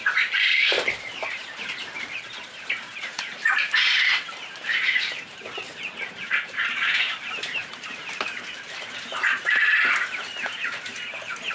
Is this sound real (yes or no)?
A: no